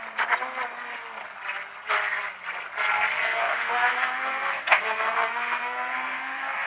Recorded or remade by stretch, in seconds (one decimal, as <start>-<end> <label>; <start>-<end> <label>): 0.0-3.2 recorded; 3.2-6.7 remade